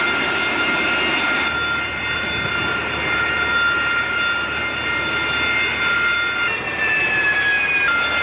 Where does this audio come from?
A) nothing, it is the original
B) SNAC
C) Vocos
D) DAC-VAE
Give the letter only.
A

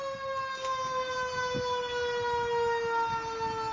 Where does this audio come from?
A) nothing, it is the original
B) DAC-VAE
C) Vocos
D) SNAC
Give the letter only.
A